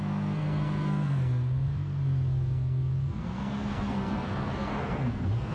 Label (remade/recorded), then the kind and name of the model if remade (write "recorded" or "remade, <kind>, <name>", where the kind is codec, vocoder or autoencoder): remade, codec, SNAC